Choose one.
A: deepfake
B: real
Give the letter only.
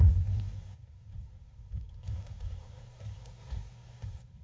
A